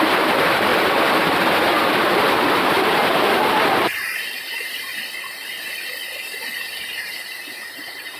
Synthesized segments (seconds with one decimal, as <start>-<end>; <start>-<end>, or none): 0.0-0.7; 2.6-4.9; 6.8-8.2